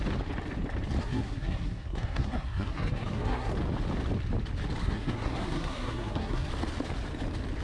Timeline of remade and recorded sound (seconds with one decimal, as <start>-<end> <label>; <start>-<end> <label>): 0.0-1.0 recorded; 1.0-3.5 remade; 3.5-4.8 recorded; 4.8-6.5 remade; 6.5-7.6 recorded